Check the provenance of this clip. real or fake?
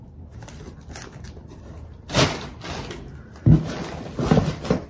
real